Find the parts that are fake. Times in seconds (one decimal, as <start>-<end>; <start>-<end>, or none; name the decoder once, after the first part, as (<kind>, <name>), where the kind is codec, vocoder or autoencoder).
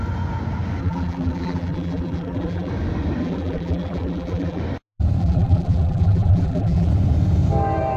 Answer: 0.8-2.7 (vocoder, BigVGAN v2); 3.2-4.6; 5.2-6.9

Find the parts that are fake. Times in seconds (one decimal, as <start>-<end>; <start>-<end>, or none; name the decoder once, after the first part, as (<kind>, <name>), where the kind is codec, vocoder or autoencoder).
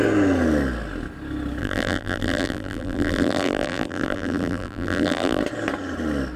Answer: 1.6-5.4 (vocoder, BigVGAN v2)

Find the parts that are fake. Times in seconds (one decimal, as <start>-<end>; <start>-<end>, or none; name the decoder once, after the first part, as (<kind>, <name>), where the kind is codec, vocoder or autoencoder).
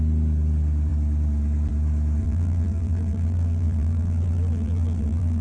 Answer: 2.2-5.4 (vocoder, BigVGAN v2)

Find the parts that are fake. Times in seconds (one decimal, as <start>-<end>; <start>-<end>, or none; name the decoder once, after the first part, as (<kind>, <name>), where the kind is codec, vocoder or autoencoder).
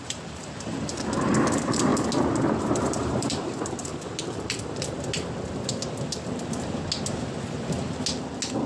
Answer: 0.0-1.9 (vocoder, BigVGAN v2); 2.6-3.9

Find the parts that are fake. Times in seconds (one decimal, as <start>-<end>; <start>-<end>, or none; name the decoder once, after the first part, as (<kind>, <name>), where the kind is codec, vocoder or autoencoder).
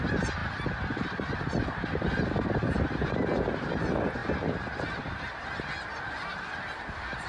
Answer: 0.0-7.3 (vocoder, BigVGAN v2)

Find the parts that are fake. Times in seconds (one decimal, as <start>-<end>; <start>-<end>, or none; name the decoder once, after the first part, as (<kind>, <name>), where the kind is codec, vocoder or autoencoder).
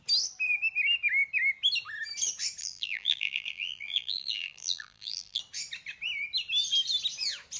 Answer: 2.6-5.4 (vocoder, BigVGAN v2)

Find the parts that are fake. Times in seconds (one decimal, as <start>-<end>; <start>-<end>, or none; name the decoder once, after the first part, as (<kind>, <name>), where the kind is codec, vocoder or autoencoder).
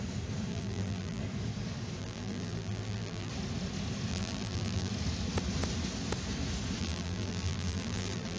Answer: 0.5-1.2 (vocoder, BigVGAN v2); 2.0-3.3; 4.1-4.9; 6.8-8.4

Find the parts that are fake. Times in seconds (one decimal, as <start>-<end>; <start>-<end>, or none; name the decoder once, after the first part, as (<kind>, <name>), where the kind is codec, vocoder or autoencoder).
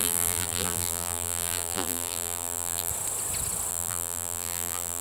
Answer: 0.0-2.9 (vocoder, BigVGAN v2); 3.7-5.0